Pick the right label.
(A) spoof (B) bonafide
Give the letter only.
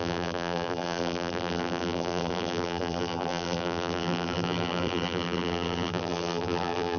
A